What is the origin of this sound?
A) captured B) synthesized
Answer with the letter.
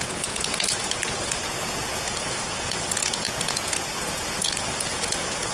B